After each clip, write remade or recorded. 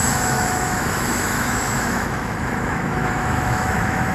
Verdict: remade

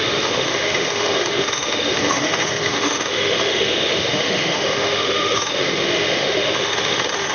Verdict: remade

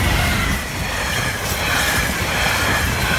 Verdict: recorded